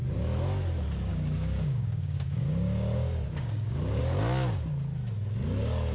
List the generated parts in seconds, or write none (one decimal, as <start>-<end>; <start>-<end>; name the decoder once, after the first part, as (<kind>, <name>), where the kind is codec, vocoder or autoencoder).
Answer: 1.1-4.0 (codec, DAC)